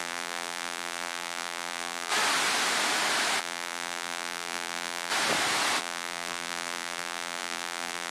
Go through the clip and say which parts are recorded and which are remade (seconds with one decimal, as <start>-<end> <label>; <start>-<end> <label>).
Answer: 0.0-2.1 remade; 2.1-3.4 recorded; 3.4-5.1 remade; 5.1-5.8 recorded; 5.8-8.1 remade

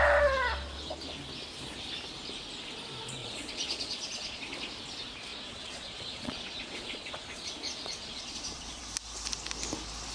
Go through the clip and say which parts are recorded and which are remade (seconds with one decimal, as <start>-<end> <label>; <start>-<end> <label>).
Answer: 0.0-3.2 recorded; 3.2-4.4 remade; 4.4-5.3 recorded; 5.3-8.8 remade; 8.8-10.1 recorded

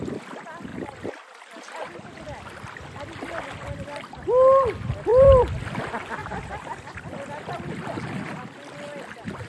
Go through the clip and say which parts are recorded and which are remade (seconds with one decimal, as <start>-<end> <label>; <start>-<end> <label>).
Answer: 0.0-0.7 recorded; 0.7-2.2 remade; 2.2-5.1 recorded; 5.1-5.8 remade; 5.8-6.2 recorded; 6.2-8.0 remade; 8.0-9.5 recorded